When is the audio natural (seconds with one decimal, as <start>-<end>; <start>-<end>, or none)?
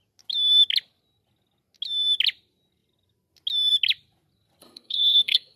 0.0-4.6